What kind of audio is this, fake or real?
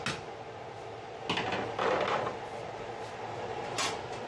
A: real